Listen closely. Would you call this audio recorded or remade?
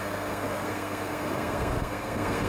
remade